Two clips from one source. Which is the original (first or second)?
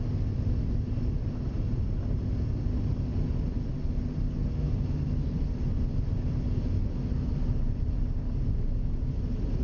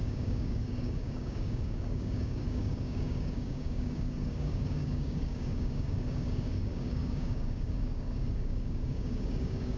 first